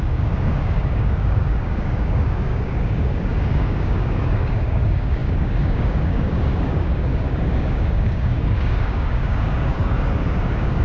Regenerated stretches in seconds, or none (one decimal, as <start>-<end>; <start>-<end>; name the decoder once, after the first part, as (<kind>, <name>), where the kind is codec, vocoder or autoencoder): 0.0-10.8 (codec, DAC)